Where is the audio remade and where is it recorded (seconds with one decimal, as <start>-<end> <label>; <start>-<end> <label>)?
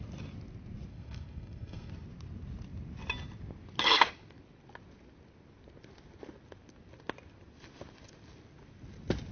0.0-0.9 recorded; 0.9-1.9 remade; 1.9-9.3 recorded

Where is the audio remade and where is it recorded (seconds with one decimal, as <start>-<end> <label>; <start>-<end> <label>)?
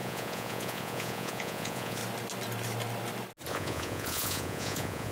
0.0-2.0 remade; 2.0-3.5 recorded; 3.5-5.1 remade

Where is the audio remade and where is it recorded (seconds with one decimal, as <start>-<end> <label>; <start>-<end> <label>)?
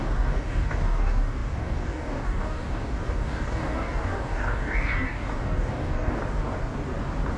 0.0-6.2 remade; 6.2-7.4 recorded